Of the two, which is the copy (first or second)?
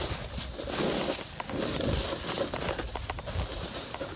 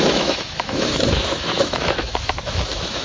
second